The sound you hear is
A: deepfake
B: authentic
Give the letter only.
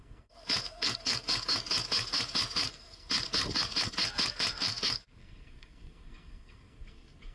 A